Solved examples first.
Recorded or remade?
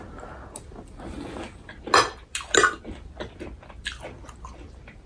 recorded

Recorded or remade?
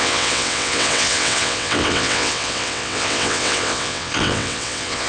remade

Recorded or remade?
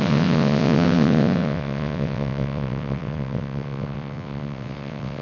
remade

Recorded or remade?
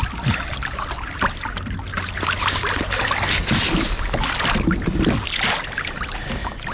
recorded